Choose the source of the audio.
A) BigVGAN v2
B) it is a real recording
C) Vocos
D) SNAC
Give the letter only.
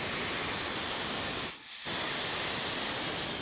A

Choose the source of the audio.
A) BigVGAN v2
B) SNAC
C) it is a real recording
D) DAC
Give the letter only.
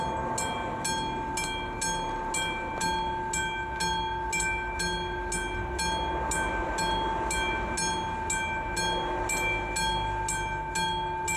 C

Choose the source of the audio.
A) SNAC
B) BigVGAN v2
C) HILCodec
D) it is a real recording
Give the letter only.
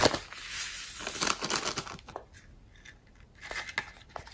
D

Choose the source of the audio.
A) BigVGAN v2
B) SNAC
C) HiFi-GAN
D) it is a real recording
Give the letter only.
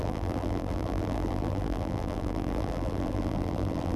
A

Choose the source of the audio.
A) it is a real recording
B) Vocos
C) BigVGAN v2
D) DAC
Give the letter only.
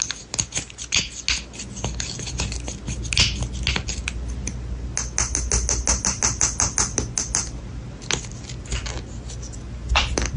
A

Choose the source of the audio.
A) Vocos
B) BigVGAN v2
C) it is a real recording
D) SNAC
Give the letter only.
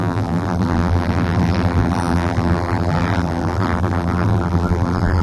B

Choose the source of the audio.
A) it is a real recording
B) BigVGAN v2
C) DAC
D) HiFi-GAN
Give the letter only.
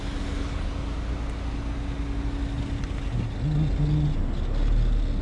A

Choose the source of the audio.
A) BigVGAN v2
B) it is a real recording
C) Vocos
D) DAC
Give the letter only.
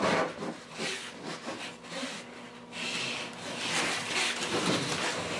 B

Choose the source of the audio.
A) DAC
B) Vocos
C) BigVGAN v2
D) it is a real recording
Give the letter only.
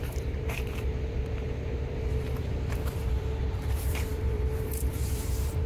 C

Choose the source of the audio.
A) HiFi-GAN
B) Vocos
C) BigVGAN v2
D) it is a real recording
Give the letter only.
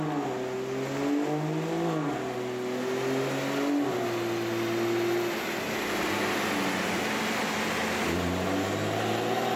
D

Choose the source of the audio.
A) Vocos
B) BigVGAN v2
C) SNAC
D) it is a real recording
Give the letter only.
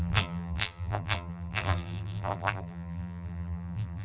B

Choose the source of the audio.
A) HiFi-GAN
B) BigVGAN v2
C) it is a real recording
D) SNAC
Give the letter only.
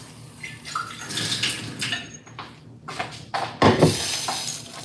C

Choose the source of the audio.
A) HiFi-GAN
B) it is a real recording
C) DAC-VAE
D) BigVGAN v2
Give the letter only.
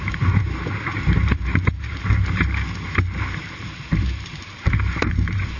D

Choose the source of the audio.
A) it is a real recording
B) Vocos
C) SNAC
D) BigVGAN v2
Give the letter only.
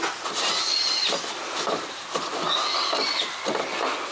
A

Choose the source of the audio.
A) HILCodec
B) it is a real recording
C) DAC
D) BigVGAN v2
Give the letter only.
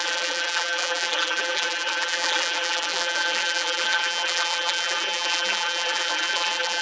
D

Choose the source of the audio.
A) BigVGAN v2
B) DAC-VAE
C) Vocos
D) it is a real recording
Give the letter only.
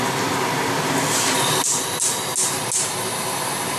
D